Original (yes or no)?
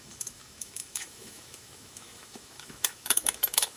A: no